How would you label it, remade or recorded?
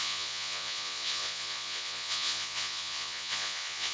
remade